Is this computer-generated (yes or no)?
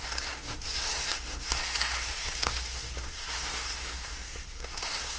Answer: yes